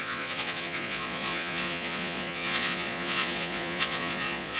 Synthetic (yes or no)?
yes